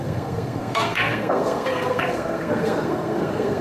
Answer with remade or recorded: remade